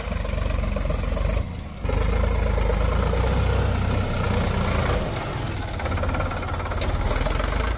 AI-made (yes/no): no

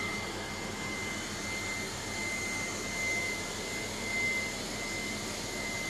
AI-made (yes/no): no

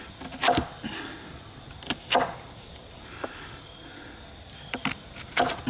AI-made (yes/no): no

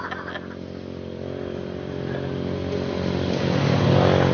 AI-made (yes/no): no